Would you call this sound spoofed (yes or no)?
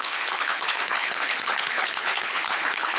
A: yes